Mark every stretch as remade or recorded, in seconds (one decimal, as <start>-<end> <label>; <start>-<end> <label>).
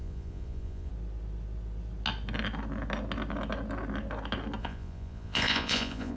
0.0-0.9 remade; 0.9-4.6 recorded; 4.6-6.2 remade